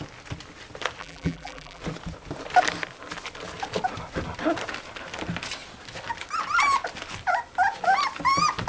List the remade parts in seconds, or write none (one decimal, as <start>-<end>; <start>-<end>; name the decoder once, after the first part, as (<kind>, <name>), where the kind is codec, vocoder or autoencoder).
1.0-1.8 (vocoder, BigVGAN v2)

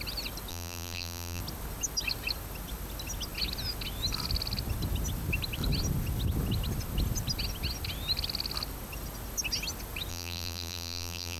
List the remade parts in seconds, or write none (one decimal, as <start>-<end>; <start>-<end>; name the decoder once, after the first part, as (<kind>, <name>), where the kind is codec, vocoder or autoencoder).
0.5-1.4 (vocoder, BigVGAN v2); 10.1-11.4

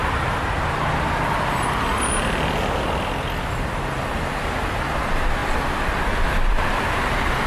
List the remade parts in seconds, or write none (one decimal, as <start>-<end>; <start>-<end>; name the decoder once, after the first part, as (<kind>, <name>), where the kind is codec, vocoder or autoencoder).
0.0-0.6 (vocoder, BigVGAN v2)

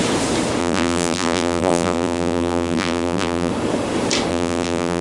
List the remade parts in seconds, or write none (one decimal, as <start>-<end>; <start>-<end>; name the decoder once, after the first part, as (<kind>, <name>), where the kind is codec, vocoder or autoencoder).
0.6-3.5 (vocoder, BigVGAN v2); 4.3-5.0

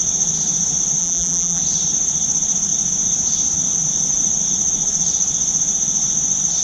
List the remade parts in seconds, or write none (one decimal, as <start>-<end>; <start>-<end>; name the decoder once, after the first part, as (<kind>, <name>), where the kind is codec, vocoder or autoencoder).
1.0-1.6 (vocoder, BigVGAN v2)

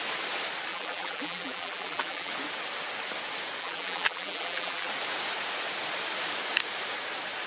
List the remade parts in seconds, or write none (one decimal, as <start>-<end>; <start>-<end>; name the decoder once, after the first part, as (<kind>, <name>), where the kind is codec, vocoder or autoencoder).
0.7-2.3 (vocoder, BigVGAN v2); 3.6-4.9